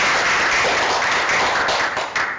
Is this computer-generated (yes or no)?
yes